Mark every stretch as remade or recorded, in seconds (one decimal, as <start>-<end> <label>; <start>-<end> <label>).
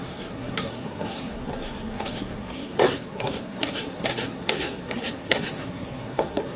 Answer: 0.0-6.6 remade